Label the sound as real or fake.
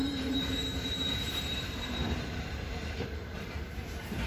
fake